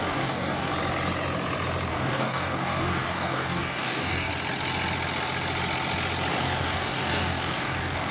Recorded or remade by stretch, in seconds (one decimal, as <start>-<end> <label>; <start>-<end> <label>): 0.0-0.7 remade; 0.7-1.9 recorded; 1.9-4.3 remade; 4.3-6.3 recorded; 6.3-8.1 remade